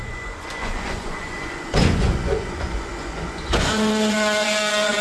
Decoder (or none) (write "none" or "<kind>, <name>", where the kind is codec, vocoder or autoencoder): vocoder, Vocos